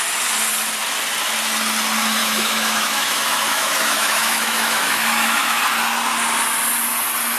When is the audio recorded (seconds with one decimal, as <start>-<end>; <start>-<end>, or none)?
0.0-2.2; 5.6-7.4

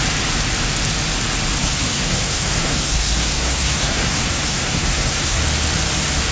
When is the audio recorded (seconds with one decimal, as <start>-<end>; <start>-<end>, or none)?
0.0-1.6; 5.4-6.3